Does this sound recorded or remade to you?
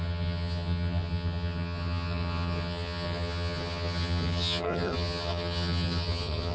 remade